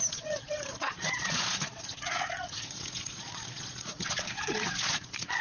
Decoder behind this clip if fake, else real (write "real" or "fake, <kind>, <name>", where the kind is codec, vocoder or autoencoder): fake, vocoder, Vocos